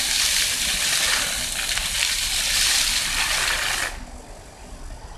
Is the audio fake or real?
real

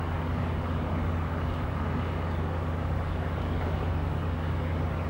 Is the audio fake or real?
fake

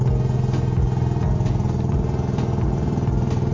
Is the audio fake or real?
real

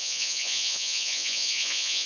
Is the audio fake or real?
fake